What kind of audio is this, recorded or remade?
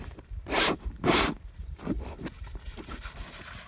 remade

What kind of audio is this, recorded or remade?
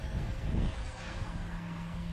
remade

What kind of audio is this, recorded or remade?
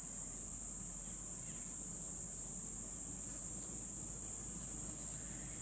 recorded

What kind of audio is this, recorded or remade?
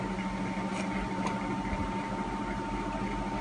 recorded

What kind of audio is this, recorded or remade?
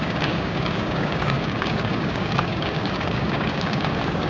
remade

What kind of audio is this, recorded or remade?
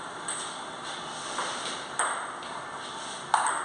recorded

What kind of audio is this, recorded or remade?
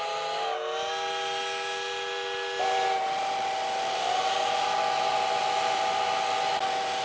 recorded